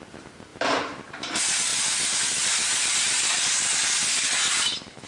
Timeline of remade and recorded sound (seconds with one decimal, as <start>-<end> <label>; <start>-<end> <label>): 0.0-0.5 recorded; 0.5-1.1 remade; 1.1-1.7 recorded; 1.7-5.1 remade